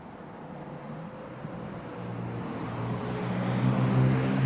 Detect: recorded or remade recorded